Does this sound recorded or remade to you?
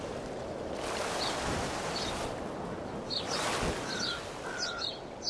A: recorded